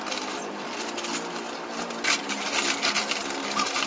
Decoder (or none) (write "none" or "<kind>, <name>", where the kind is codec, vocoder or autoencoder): none